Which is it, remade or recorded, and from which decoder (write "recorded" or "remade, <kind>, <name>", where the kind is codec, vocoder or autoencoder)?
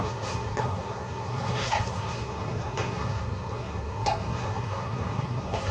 remade, codec, SNAC